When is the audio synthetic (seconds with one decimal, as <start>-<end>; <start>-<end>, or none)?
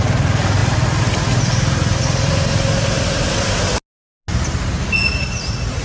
none